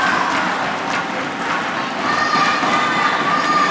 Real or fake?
real